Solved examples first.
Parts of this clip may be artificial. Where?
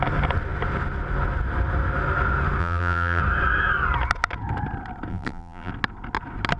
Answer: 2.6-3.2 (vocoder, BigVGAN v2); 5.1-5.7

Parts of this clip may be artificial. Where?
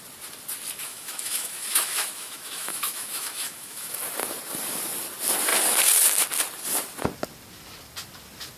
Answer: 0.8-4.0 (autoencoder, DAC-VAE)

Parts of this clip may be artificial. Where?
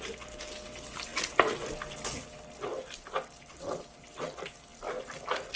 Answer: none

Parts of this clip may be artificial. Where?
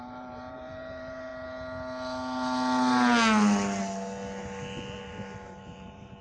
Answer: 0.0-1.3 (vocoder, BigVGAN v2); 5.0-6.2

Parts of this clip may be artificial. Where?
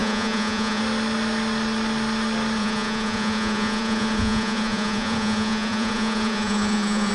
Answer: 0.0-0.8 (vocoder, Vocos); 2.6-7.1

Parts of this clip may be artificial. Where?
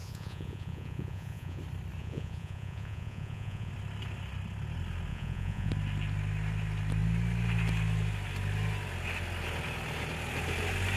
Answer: 0.0-1.6 (vocoder, Vocos); 2.0-3.7; 5.1-5.7